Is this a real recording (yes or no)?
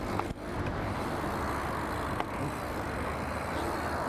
yes